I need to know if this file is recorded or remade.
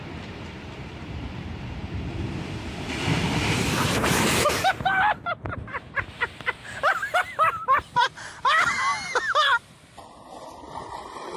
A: remade